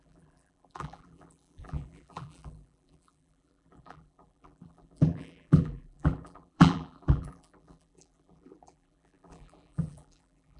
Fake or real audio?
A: fake